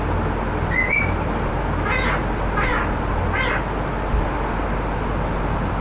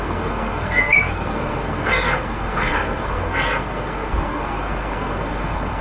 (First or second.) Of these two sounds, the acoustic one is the first